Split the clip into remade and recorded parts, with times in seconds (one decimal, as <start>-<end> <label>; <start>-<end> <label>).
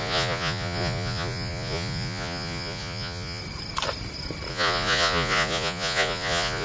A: 0.0-3.4 remade; 3.4-4.5 recorded; 4.5-6.6 remade